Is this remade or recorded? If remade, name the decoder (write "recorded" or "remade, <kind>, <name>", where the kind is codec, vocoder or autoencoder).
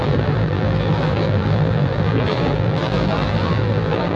remade, vocoder, BigVGAN v2